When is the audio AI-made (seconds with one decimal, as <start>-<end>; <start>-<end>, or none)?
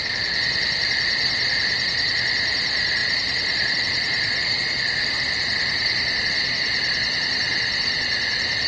none